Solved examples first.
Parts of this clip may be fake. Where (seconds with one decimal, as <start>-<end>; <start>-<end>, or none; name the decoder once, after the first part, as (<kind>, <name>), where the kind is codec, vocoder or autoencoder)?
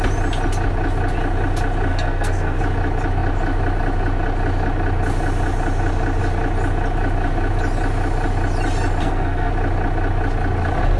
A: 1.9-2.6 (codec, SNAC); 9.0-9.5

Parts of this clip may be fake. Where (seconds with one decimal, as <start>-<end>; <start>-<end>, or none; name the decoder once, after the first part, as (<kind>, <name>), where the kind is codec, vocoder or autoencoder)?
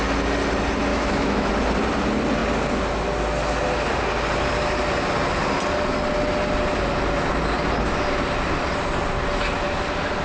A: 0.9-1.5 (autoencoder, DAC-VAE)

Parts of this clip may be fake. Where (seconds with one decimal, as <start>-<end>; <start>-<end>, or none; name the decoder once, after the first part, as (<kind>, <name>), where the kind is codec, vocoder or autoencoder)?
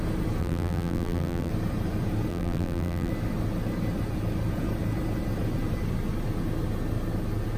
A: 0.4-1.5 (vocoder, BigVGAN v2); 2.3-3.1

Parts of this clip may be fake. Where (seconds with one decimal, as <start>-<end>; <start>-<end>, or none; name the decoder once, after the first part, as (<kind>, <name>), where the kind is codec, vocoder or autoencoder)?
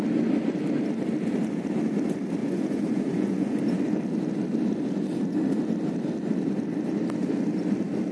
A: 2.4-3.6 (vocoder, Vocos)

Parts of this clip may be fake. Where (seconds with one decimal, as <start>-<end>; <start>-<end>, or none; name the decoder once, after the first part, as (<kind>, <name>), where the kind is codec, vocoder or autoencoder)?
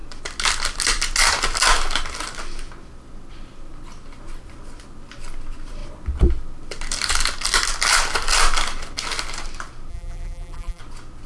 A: 9.9-10.8 (vocoder, BigVGAN v2)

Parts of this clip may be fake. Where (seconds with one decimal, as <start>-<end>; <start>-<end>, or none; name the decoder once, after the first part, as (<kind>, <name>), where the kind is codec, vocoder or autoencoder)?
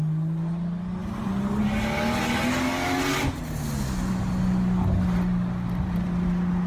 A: none